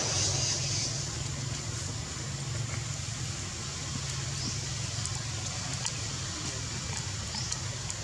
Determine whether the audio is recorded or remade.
recorded